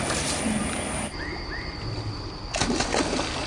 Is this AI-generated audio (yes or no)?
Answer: no